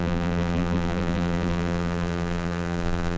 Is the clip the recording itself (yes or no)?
no